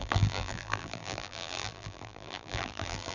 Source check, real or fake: fake